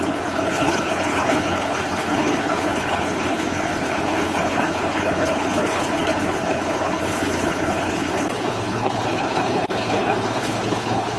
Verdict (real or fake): fake